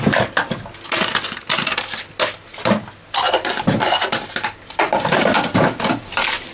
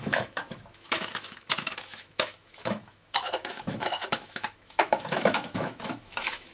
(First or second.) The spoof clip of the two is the second